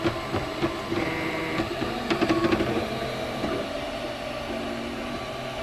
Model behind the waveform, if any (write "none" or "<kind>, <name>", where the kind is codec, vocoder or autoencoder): vocoder, BigVGAN v2